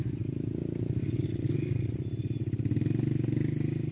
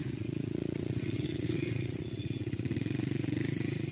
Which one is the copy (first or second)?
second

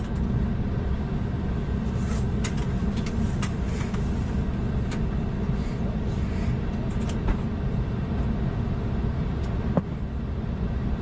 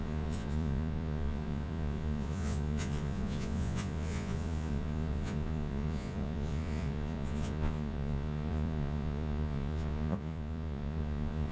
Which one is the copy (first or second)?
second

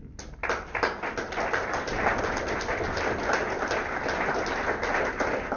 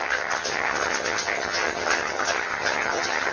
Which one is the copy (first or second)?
second